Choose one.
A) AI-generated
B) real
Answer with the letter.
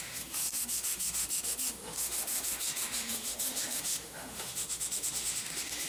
A